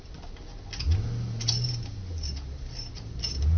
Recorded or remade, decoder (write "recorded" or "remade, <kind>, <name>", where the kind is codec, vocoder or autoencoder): recorded